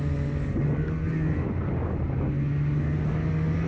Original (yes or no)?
yes